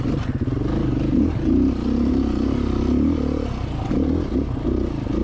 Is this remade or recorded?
recorded